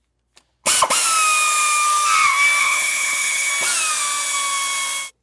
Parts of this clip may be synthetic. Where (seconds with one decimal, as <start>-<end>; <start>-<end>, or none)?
2.6-3.5